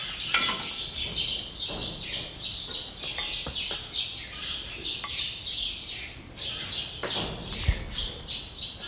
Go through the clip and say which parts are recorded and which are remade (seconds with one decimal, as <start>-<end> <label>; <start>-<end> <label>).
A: 0.0-8.9 recorded